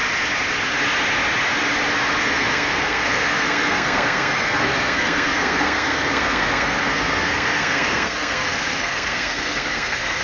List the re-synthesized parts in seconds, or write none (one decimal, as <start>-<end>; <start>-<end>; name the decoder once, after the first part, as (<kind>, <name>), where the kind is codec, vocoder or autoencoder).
2.2-10.2 (codec, SNAC)